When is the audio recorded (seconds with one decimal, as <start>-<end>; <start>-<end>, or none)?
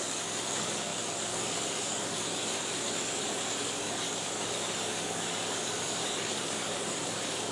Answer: none